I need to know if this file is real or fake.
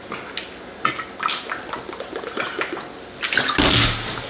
real